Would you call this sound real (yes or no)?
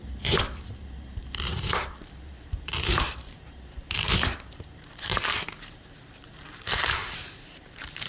no